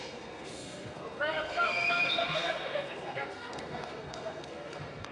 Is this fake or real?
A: fake